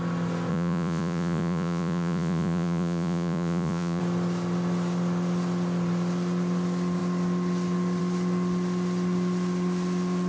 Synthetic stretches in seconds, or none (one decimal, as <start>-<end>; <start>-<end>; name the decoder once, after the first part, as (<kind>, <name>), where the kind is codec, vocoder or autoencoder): 0.5-4.0 (vocoder, Vocos)